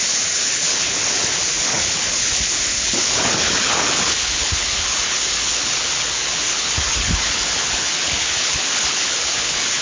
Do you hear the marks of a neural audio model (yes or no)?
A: yes